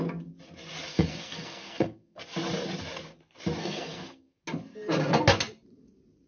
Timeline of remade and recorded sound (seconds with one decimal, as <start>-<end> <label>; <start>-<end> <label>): 0.0-0.9 recorded; 0.9-2.2 remade; 2.2-3.6 recorded; 3.6-4.4 remade; 4.4-6.3 recorded